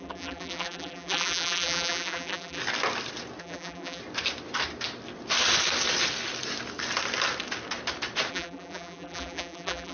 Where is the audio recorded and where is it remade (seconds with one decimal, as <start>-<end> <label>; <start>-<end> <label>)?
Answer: 0.0-2.6 remade; 2.6-3.4 recorded; 3.4-4.0 remade; 4.0-8.3 recorded; 8.3-9.9 remade

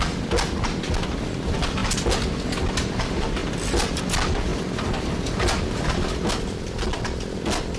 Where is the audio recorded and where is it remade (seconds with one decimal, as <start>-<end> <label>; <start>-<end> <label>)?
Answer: 0.0-3.4 recorded; 3.4-4.0 remade; 4.0-4.5 recorded; 4.5-6.3 remade; 6.3-7.8 recorded

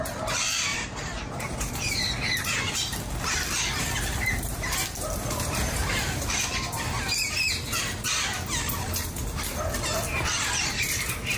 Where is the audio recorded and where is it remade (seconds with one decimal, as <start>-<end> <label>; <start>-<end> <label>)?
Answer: 0.0-0.7 recorded; 0.7-1.7 remade; 1.7-5.8 recorded; 5.8-6.3 remade; 6.3-11.4 recorded

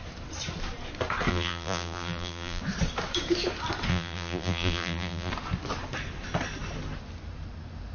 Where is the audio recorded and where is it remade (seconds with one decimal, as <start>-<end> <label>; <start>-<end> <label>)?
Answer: 0.0-1.3 recorded; 1.3-2.6 remade; 2.6-3.9 recorded; 3.9-5.3 remade; 5.3-7.9 recorded

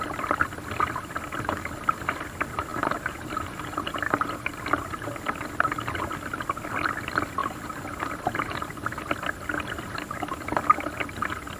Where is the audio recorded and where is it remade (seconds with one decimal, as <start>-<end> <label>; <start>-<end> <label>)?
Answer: 0.0-2.7 recorded; 2.7-4.6 remade; 4.6-7.4 recorded; 7.4-8.7 remade; 8.7-11.6 recorded